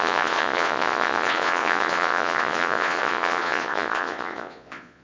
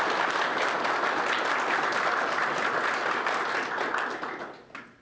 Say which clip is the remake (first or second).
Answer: first